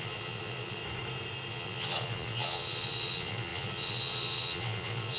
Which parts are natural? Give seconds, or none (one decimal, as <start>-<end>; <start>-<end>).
0.8-1.5